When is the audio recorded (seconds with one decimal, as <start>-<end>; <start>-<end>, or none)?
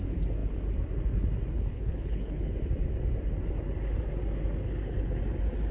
0.0-1.7; 2.4-5.7